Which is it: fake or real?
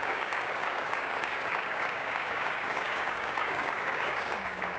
fake